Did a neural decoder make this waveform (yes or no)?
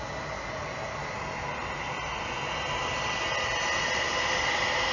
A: no